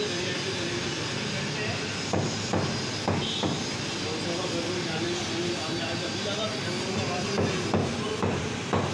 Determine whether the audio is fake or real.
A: real